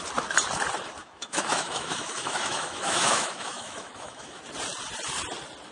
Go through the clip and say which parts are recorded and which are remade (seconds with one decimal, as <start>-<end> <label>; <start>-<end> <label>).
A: 0.0-1.0 recorded; 1.0-4.4 remade; 4.4-5.7 recorded